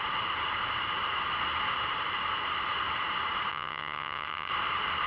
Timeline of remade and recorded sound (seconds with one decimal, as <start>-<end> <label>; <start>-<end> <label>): 0.0-3.5 recorded; 3.5-4.5 remade; 4.5-5.1 recorded